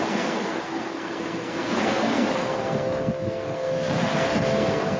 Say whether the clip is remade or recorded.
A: remade